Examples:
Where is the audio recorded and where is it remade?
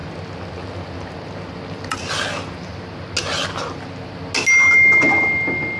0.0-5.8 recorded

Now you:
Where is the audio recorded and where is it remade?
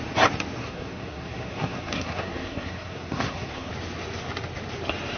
0.0-0.6 recorded; 0.6-3.7 remade; 3.7-5.2 recorded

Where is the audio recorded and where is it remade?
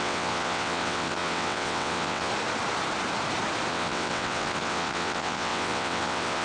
0.0-2.3 remade; 2.3-3.7 recorded; 3.7-6.4 remade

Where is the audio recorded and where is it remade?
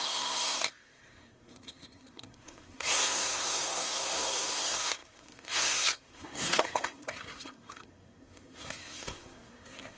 0.0-10.0 remade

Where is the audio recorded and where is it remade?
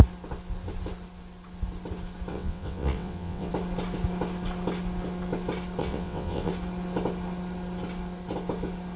0.0-2.3 recorded; 2.3-3.5 remade; 3.5-5.8 recorded; 5.8-6.5 remade; 6.5-9.0 recorded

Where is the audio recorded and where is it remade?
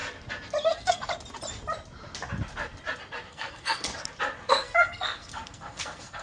0.0-0.7 recorded; 0.7-1.1 remade; 1.1-3.3 recorded; 3.3-3.9 remade; 3.9-4.5 recorded; 4.5-6.2 remade